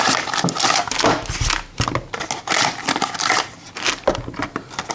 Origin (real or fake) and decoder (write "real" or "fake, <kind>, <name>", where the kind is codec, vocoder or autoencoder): real